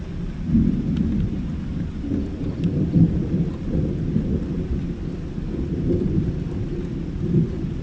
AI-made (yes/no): yes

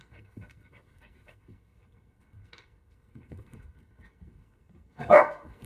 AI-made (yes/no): yes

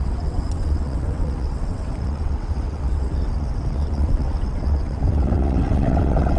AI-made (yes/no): yes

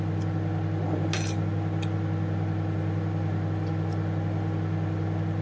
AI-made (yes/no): no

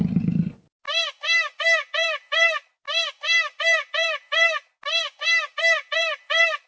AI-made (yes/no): no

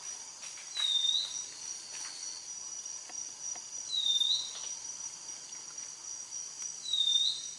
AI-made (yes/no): no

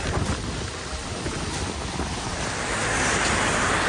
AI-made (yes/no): no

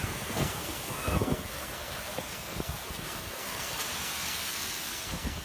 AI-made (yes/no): yes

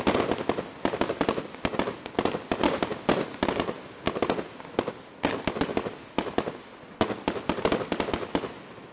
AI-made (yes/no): no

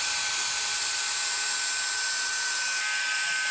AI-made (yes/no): no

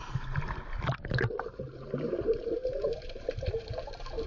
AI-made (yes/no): yes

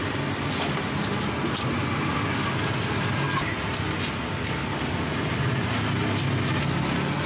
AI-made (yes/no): no